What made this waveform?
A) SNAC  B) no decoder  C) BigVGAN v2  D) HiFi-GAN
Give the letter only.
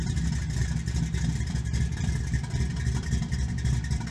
C